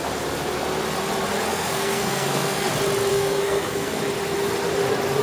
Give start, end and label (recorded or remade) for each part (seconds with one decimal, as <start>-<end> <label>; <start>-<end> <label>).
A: 0.0-1.5 recorded; 1.5-2.7 remade; 2.7-3.1 recorded; 3.1-4.0 remade; 4.0-5.2 recorded